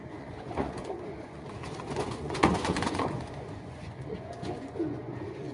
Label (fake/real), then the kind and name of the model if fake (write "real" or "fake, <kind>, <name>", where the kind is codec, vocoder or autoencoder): fake, vocoder, Vocos